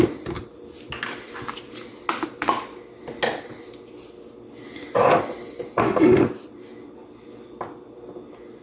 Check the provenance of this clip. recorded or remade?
recorded